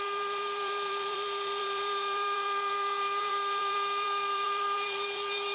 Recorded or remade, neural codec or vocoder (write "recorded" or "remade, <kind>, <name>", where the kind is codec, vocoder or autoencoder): remade, vocoder, BigVGAN v2